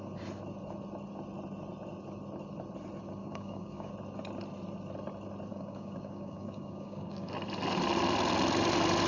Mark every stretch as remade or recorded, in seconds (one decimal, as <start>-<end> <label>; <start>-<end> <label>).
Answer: 0.0-3.2 recorded; 3.2-3.9 remade; 3.9-5.5 recorded; 5.5-7.3 remade; 7.3-9.1 recorded